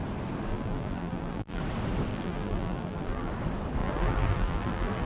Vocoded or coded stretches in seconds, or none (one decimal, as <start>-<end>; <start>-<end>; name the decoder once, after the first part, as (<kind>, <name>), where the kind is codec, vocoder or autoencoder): 0.5-1.6 (vocoder, BigVGAN v2); 2.1-3.3; 3.8-5.1